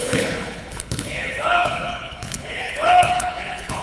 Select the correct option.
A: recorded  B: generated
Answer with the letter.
B